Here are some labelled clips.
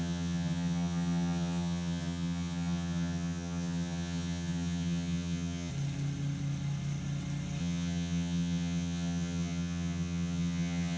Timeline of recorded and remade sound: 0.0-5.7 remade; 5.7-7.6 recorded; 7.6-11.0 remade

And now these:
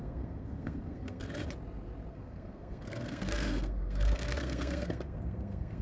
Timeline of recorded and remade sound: 0.0-1.2 remade; 1.2-2.1 recorded; 2.1-5.8 remade

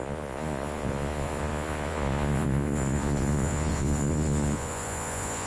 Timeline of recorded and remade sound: 0.0-5.5 remade